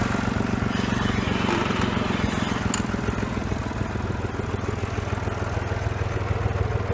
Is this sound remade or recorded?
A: recorded